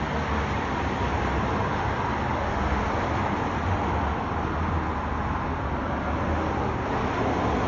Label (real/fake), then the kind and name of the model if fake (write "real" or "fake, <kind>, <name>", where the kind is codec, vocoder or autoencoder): real